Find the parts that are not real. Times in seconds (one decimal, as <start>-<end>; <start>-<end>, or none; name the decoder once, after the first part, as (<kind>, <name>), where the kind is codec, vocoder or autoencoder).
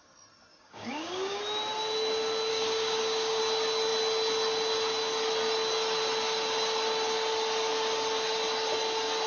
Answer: 0.5-1.4 (codec, DAC); 2.5-3.4